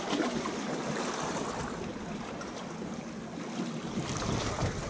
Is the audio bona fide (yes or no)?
yes